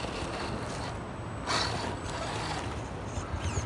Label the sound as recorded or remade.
recorded